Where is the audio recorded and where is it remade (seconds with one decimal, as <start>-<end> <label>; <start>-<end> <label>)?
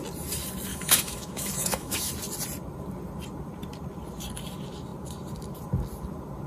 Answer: 0.0-0.7 recorded; 0.7-2.1 remade; 2.1-6.5 recorded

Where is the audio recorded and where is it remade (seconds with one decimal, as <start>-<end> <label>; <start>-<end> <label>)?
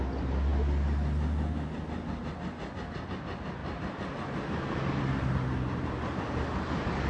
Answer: 0.0-0.5 remade; 0.5-3.1 recorded; 3.1-3.6 remade; 3.6-5.0 recorded; 5.0-7.1 remade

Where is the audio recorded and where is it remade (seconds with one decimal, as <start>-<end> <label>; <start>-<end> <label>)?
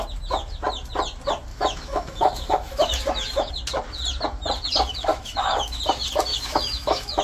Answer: 0.0-1.5 recorded; 1.5-3.5 remade; 3.5-5.1 recorded; 5.1-5.8 remade; 5.8-6.3 recorded; 6.3-7.2 remade